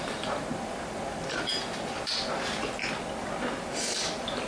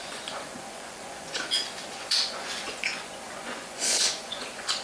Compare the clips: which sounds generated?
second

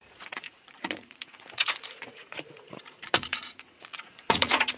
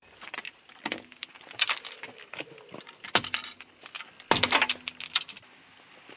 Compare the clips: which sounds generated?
first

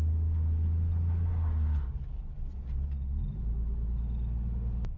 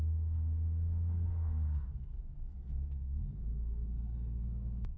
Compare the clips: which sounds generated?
second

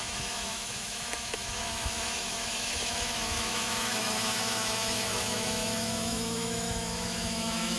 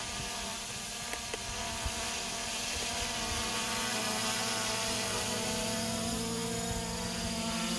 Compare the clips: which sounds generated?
first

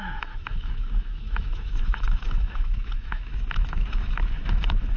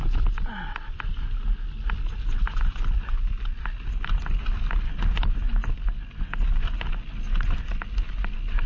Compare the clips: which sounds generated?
first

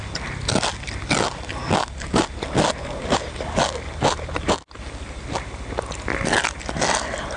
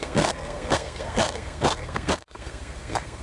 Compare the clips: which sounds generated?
second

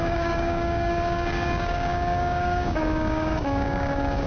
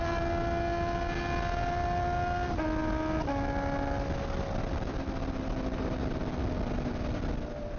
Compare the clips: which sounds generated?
first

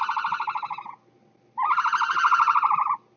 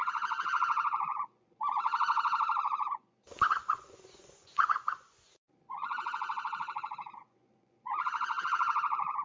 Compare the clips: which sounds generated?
second